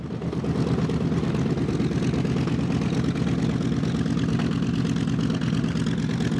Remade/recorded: recorded